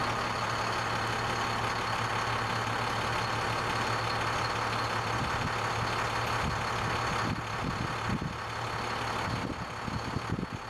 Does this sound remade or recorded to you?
recorded